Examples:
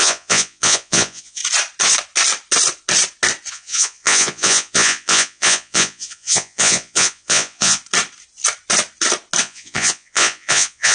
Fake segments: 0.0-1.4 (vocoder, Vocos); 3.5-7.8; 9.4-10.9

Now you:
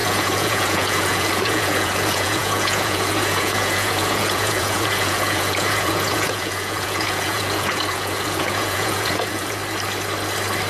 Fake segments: 0.0-9.6 (vocoder, Vocos)

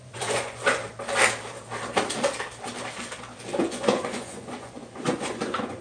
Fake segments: 0.0-0.8 (vocoder, Vocos); 3.6-5.8

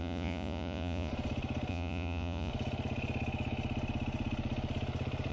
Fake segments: 0.0-1.1 (vocoder, Vocos); 1.7-2.5